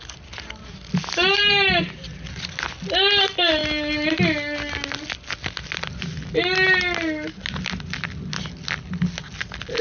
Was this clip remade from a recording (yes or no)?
no